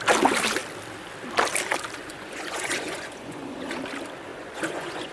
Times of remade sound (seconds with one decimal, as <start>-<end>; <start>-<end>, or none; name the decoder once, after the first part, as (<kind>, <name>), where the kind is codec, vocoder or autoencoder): 2.0-3.8 (vocoder, Vocos); 4.3-5.1